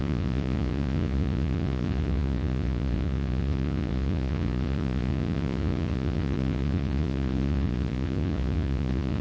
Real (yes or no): no